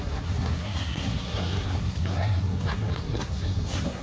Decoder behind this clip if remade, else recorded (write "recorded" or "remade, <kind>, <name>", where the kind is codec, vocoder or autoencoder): remade, codec, SNAC